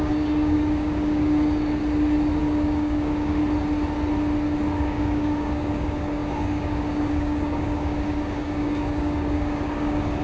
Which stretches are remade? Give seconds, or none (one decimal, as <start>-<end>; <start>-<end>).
0.0-1.8; 2.4-3.4; 4.8-10.2